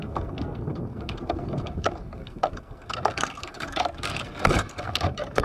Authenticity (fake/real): fake